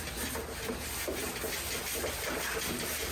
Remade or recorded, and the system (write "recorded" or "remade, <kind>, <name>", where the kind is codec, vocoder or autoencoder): recorded